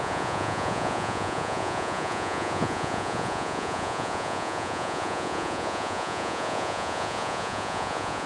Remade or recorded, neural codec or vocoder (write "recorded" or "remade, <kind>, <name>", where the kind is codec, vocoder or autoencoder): remade, vocoder, Vocos